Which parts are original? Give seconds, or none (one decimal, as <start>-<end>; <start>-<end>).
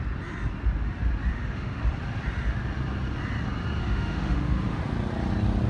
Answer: 0.0-1.3; 1.8-3.8; 4.8-5.7